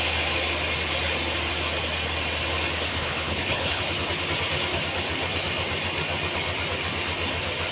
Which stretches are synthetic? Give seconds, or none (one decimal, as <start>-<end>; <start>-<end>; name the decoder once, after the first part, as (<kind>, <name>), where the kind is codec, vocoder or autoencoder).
2.9-3.8 (codec, HILCodec)